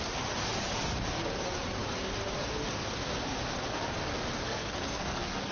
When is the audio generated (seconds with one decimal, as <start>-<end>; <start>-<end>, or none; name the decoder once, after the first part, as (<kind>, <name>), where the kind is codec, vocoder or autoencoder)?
4.4-5.5 (codec, SNAC)